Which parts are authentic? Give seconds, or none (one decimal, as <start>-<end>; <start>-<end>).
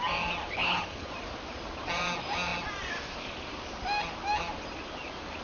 0.0-0.4; 1.1-5.4